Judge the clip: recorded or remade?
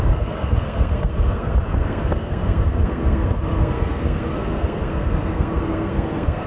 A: remade